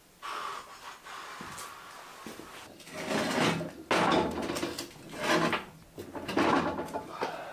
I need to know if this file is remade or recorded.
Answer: recorded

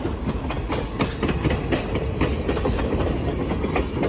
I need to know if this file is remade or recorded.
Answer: recorded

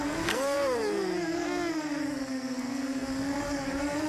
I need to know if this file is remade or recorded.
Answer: remade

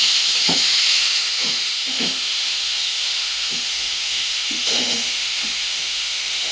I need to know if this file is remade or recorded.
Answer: remade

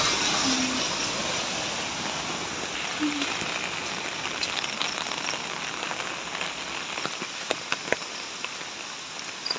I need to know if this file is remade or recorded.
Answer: recorded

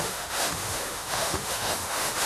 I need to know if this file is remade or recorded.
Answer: remade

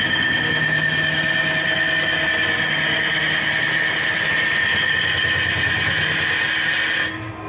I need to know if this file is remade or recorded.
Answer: recorded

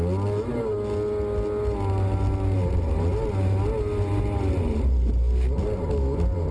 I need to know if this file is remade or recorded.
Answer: recorded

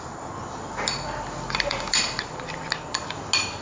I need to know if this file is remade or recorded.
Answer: recorded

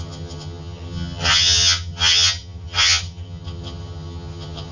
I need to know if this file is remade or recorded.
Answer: remade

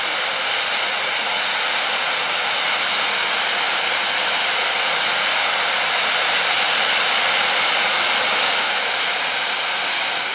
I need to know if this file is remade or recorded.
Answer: recorded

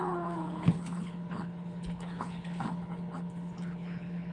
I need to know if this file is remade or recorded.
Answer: remade